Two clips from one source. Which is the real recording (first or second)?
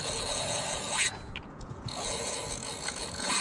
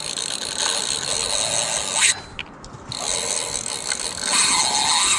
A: second